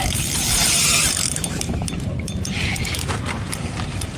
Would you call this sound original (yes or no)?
no